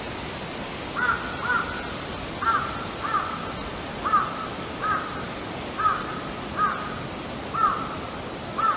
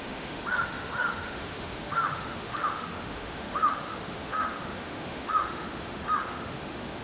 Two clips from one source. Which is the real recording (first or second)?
first